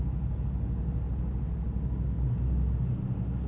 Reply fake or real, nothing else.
real